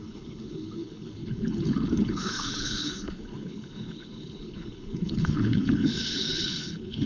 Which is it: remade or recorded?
remade